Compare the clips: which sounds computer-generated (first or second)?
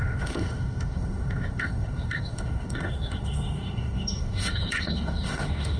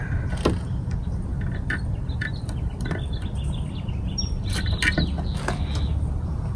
first